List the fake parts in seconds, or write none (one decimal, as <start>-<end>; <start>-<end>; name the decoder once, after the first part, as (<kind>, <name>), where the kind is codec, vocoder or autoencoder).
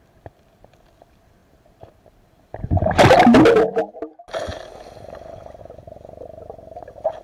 none